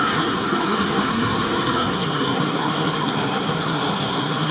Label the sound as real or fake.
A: fake